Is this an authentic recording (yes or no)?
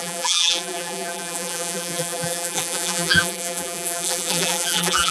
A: no